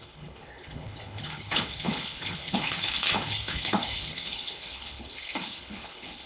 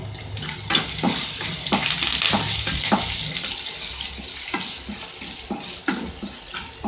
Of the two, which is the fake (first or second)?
first